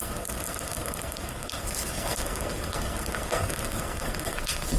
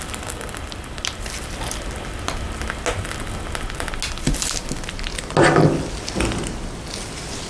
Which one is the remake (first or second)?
first